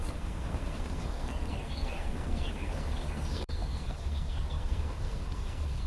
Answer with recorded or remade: remade